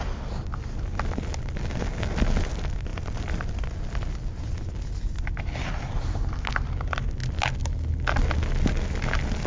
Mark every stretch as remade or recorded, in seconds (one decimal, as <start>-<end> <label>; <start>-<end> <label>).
0.0-2.9 recorded; 2.9-3.5 remade; 3.5-9.5 recorded